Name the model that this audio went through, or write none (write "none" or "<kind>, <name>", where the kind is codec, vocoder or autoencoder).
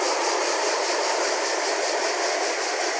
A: none